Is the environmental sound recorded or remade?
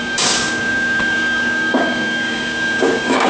remade